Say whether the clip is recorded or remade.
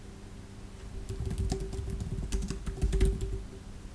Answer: recorded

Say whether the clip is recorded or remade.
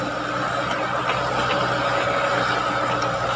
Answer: recorded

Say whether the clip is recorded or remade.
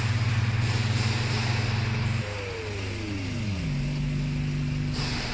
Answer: recorded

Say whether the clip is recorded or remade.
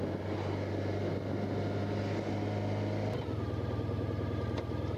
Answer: recorded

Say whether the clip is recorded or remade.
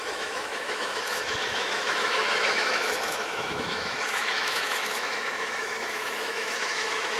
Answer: remade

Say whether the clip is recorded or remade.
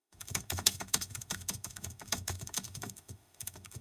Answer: remade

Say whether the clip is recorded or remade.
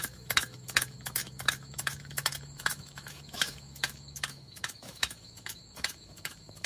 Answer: remade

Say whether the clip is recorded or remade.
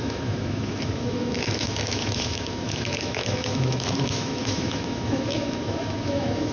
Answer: remade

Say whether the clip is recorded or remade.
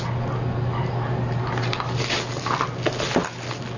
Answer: recorded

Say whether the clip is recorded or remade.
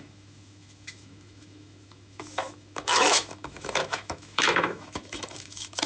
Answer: remade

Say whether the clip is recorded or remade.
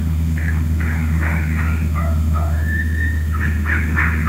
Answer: remade